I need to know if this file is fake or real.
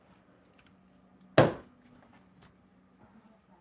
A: real